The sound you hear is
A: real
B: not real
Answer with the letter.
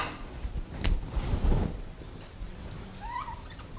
A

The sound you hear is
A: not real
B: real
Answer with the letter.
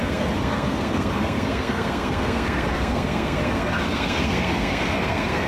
A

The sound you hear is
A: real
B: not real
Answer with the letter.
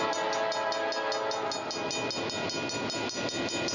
A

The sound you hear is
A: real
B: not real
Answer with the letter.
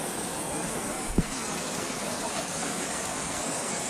B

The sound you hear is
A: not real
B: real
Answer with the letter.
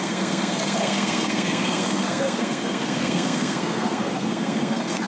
A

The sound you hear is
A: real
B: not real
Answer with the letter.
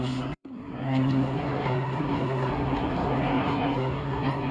B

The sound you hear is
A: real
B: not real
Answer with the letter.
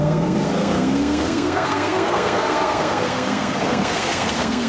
B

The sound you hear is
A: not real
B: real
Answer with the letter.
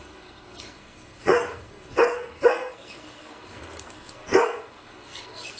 A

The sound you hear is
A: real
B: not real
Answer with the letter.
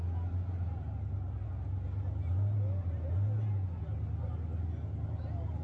A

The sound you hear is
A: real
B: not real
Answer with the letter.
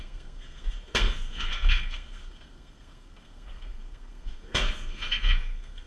B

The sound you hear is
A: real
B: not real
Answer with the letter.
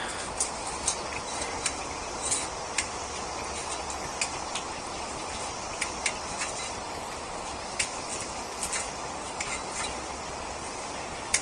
A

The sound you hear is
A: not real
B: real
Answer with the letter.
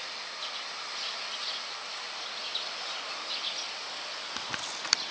B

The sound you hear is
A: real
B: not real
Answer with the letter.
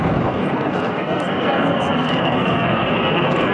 B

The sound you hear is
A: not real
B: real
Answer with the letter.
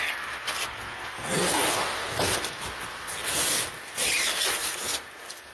B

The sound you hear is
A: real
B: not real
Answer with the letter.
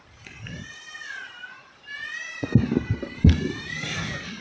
A